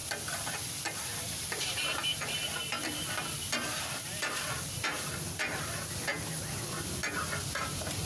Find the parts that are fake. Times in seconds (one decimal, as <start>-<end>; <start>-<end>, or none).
1.0-2.6; 3.9-6.1; 7.5-8.1